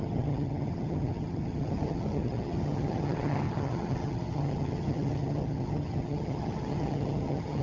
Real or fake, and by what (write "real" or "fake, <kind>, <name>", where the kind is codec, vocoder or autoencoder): fake, vocoder, HiFi-GAN